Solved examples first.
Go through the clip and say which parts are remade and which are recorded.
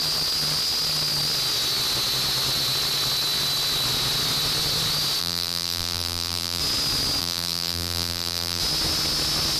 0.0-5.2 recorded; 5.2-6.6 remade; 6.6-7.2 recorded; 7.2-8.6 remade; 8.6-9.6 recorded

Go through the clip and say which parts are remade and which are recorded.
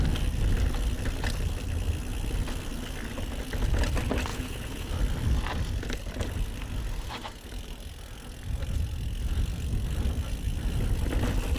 0.0-4.3 recorded; 4.3-4.9 remade; 4.9-11.6 recorded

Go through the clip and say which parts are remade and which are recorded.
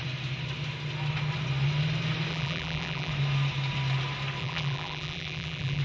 0.0-2.3 recorded; 2.3-3.1 remade; 3.1-4.4 recorded; 4.4-5.8 remade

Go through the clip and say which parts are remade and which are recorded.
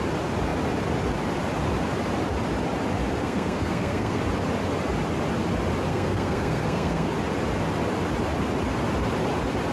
0.0-3.2 recorded; 3.2-4.2 remade; 4.2-5.9 recorded; 5.9-7.1 remade; 7.1-9.7 recorded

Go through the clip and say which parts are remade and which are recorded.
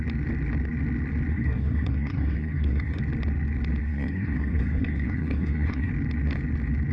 0.0-1.3 recorded; 1.3-3.0 remade; 3.0-3.8 recorded; 3.8-5.9 remade; 5.9-6.9 recorded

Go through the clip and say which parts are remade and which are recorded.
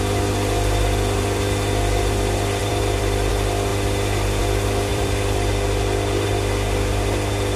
0.0-2.6 recorded; 2.6-3.3 remade; 3.3-4.9 recorded; 4.9-5.5 remade; 5.5-7.6 recorded